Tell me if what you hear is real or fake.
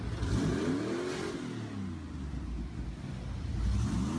real